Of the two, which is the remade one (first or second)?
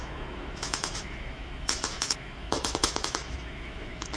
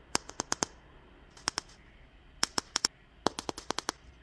first